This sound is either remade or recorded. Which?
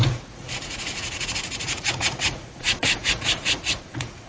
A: remade